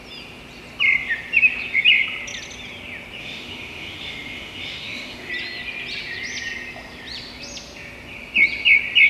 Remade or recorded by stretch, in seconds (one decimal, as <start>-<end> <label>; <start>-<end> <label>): 0.0-3.2 recorded; 3.2-5.3 remade; 5.3-9.1 recorded